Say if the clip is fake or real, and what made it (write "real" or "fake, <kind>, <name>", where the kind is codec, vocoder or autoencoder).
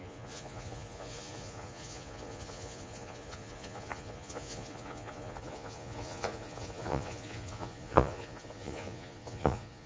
fake, vocoder, Vocos